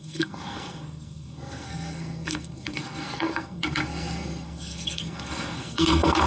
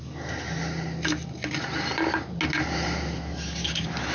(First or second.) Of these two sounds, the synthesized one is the first